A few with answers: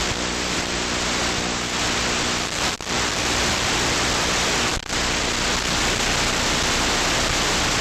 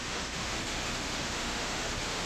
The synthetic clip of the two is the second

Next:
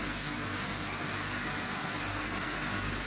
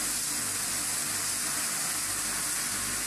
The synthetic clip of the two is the first